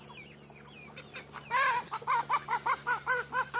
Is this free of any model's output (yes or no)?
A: yes